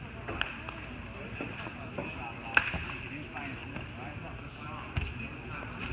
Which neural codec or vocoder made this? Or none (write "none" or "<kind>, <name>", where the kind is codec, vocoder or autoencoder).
none